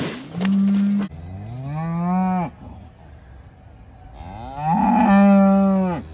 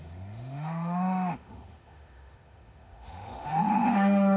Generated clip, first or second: second